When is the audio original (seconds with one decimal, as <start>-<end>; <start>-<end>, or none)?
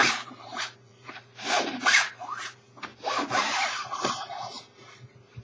2.4-2.9